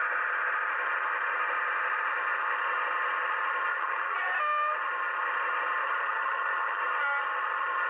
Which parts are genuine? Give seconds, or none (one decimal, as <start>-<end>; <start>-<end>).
0.0-3.7; 4.4-5.8; 6.8-7.9